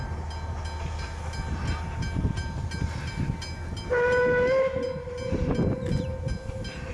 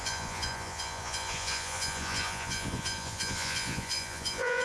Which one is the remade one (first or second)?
second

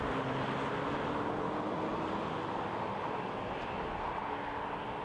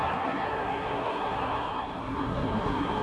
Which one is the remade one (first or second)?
second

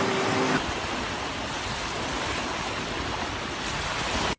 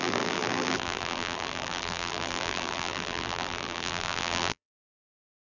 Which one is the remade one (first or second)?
second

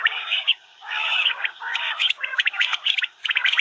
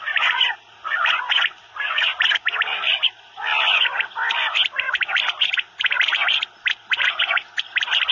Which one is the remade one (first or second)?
first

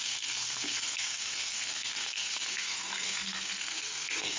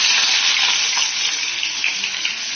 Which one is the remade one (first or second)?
first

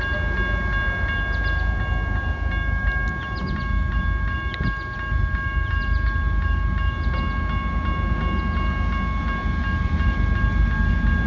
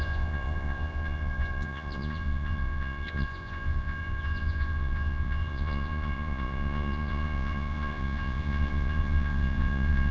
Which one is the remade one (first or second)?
second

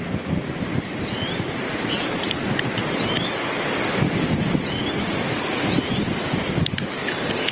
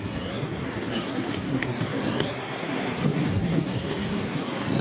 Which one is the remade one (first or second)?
second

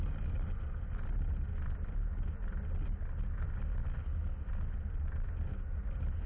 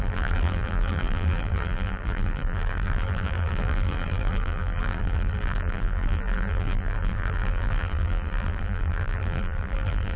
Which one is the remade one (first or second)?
second